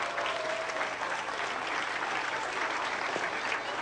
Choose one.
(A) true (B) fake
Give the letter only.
A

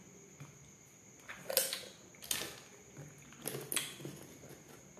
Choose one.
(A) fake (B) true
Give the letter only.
B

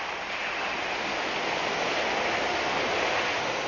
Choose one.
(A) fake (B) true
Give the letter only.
B